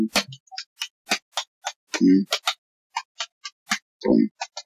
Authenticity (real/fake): real